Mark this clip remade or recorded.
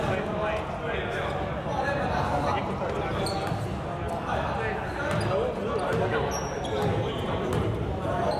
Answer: recorded